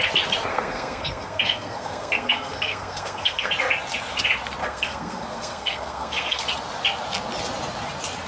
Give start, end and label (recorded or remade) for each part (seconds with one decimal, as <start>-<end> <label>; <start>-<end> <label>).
0.0-0.5 recorded; 0.5-3.5 remade; 3.5-4.6 recorded; 4.6-6.4 remade; 6.4-8.3 recorded